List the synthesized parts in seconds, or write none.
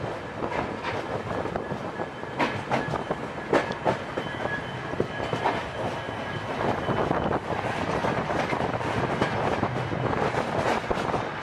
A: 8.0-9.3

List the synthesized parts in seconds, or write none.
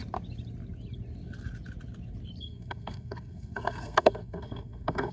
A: 2.4-5.1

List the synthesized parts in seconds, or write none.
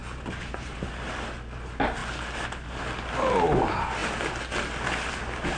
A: 0.0-1.1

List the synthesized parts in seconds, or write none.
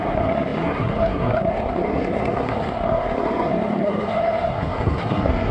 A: 0.0-5.5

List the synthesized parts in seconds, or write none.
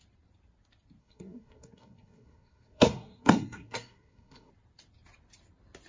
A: 1.0-4.5